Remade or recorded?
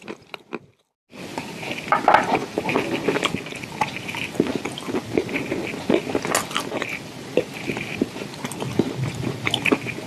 recorded